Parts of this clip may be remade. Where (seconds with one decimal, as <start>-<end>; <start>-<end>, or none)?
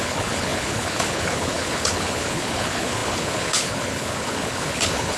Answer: 0.0-5.2